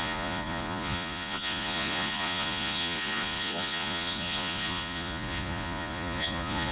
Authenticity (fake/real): fake